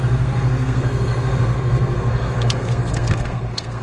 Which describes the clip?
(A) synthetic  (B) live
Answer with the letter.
A